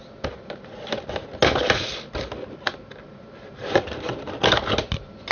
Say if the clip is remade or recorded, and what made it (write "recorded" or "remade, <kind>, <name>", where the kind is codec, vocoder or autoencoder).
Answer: recorded